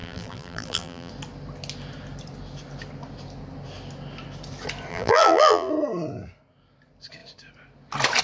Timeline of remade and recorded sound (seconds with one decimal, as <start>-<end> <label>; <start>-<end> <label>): 0.0-1.1 remade; 1.1-4.9 recorded; 4.9-5.7 remade; 5.7-8.2 recorded

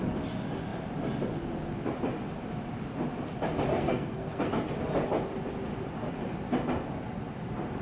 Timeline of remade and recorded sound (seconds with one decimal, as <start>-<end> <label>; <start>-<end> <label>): 0.0-3.7 recorded; 3.7-4.5 remade; 4.5-7.8 recorded

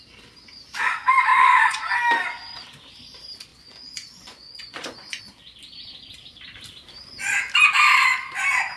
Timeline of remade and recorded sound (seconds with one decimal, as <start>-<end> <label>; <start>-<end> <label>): 0.0-1.3 recorded; 1.3-1.9 remade; 1.9-3.5 recorded; 3.5-5.2 remade; 5.2-8.8 recorded